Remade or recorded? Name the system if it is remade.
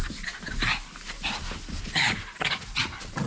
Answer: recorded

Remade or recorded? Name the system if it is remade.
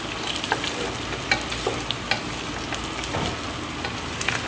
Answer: recorded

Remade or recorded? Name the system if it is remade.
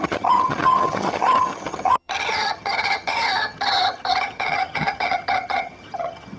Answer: remade, vocoder, HiFi-GAN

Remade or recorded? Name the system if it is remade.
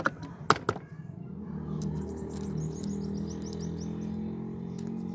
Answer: recorded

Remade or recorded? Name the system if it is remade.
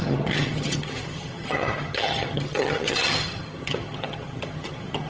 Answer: remade, vocoder, HiFi-GAN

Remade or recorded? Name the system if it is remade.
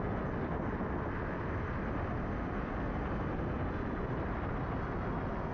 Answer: recorded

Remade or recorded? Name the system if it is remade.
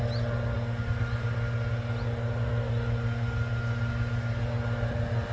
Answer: recorded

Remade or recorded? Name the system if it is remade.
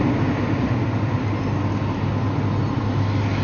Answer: recorded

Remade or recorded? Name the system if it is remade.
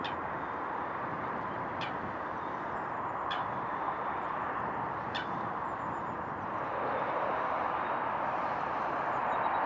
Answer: recorded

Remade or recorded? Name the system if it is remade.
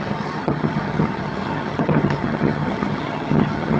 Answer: remade, vocoder, HiFi-GAN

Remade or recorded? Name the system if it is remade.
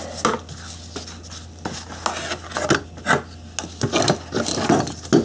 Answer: recorded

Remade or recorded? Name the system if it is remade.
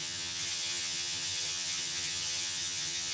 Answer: remade, vocoder, HiFi-GAN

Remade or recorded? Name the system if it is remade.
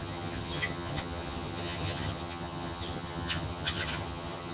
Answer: remade, vocoder, HiFi-GAN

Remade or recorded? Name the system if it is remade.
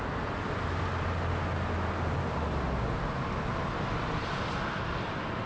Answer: recorded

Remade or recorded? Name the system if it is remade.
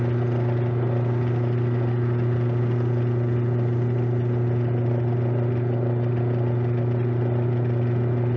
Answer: recorded